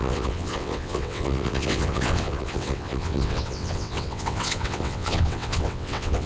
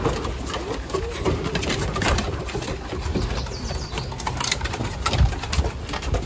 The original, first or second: second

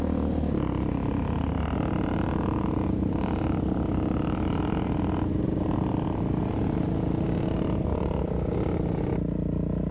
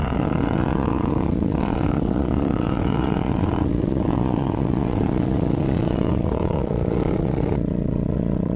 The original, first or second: first